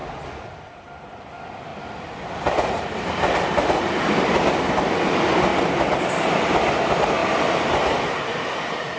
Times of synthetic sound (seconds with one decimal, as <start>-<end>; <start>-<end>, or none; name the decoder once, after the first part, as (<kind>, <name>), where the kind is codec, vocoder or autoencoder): 1.7-4.7 (vocoder, BigVGAN v2); 5.5-6.0

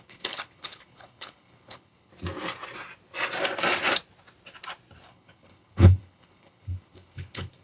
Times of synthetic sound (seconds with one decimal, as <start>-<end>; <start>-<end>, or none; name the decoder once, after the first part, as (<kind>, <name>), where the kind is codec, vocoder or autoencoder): 0.0-2.1 (codec, HILCodec); 5.1-7.6

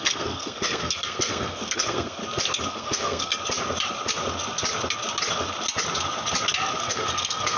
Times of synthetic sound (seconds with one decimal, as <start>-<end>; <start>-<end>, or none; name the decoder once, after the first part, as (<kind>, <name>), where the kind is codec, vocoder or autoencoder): 0.0-2.2 (codec, SNAC); 2.7-3.3; 6.8-7.6